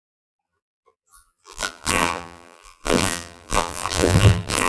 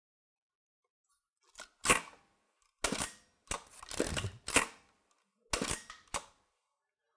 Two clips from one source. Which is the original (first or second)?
second